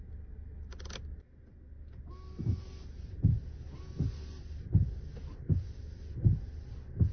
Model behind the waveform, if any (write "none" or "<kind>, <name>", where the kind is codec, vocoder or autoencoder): none